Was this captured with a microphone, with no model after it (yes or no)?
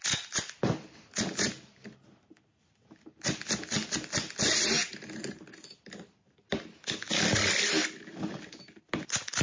yes